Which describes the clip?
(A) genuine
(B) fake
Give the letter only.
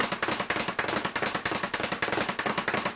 A